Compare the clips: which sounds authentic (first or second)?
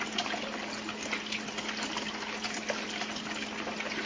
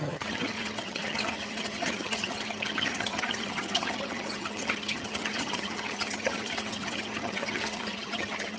first